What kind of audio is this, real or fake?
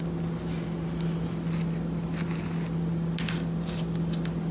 real